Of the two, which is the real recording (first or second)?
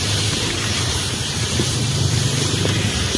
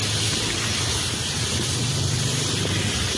second